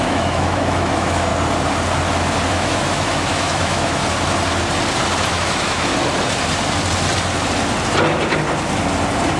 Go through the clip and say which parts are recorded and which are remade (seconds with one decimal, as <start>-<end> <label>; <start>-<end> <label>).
0.0-1.3 remade; 1.3-2.5 recorded; 2.5-4.0 remade; 4.0-5.3 recorded; 5.3-5.9 remade; 5.9-9.4 recorded